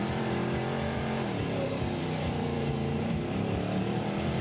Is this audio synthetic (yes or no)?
yes